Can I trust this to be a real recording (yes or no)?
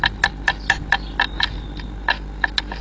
yes